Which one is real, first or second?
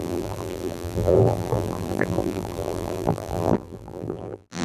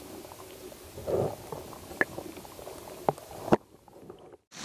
second